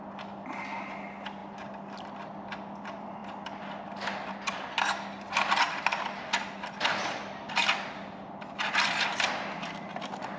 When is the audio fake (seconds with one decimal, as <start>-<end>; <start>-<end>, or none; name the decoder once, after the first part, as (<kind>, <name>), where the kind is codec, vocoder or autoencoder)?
none